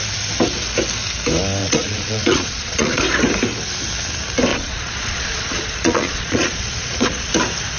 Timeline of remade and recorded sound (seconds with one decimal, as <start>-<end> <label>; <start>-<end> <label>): 0.0-1.6 recorded; 1.6-3.0 remade; 3.0-4.5 recorded; 4.5-7.3 remade; 7.3-7.8 recorded